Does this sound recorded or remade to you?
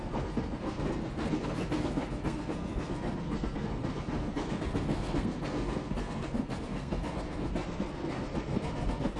remade